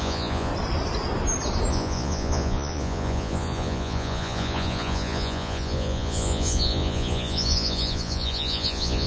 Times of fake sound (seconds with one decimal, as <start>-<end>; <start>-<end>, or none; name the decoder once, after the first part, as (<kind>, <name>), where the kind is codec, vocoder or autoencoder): 0.0-0.5 (vocoder, Vocos); 1.7-9.1